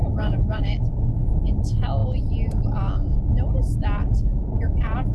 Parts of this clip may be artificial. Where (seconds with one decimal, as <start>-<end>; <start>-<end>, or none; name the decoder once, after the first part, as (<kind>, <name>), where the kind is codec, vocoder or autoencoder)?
0.0-0.8 (autoencoder, DAC-VAE)